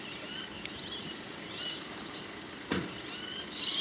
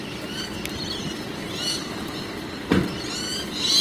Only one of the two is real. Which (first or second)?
second